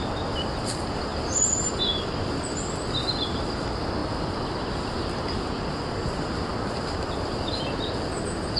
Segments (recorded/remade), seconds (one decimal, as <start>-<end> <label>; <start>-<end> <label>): 0.0-8.6 recorded